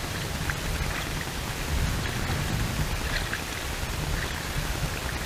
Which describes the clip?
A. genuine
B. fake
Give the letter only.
A